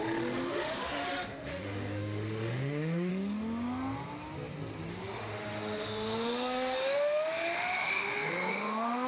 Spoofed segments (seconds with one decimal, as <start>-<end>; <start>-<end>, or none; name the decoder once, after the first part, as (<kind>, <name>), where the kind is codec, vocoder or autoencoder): 0.0-3.1 (autoencoder, DAC-VAE); 4.9-9.1